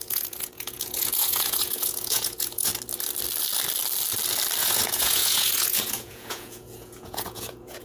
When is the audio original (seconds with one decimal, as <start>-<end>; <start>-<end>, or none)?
2.7-4.6